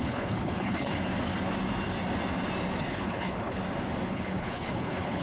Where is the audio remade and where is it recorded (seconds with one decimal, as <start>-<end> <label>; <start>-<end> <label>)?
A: 0.0-0.9 remade; 0.9-2.8 recorded; 2.8-3.6 remade; 3.6-4.1 recorded; 4.1-5.2 remade